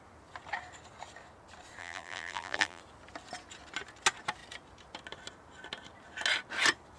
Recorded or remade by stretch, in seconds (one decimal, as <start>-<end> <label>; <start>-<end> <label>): 0.0-1.8 recorded; 1.8-2.8 remade; 2.8-7.0 recorded